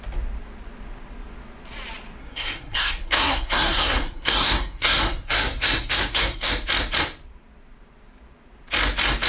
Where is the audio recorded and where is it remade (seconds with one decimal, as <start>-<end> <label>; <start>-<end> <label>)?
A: 0.0-2.2 recorded; 2.2-6.5 remade; 6.5-9.3 recorded